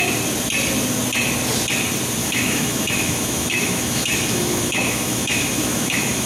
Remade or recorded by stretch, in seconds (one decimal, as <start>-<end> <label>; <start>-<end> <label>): 0.0-2.2 recorded; 2.2-6.3 remade